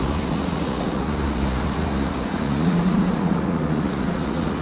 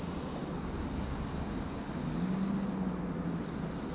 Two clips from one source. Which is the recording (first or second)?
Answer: second